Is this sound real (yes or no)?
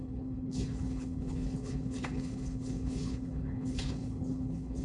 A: no